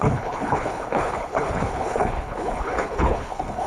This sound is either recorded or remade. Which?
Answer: remade